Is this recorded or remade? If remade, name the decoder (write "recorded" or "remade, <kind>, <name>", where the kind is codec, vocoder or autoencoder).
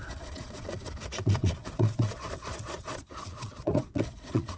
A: remade, vocoder, Vocos